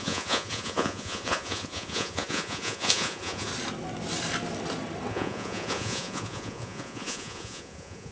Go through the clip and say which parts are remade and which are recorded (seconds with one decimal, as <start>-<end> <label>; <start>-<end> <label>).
0.0-3.5 remade; 3.5-5.1 recorded; 5.1-8.1 remade